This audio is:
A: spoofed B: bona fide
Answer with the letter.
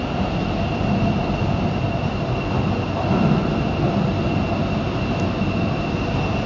B